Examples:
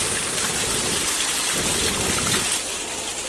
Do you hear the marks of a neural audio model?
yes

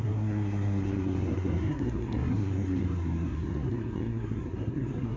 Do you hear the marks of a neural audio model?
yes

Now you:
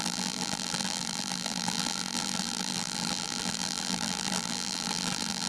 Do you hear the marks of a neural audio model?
yes